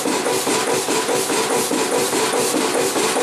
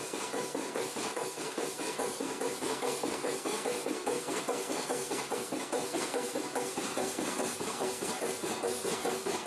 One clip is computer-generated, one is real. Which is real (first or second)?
first